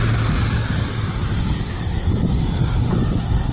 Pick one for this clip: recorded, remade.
recorded